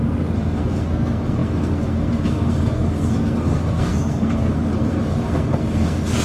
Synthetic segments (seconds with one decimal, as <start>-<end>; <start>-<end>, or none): 0.0-6.2